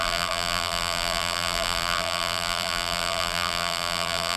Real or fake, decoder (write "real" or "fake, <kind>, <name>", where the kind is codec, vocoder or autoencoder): fake, vocoder, BigVGAN v2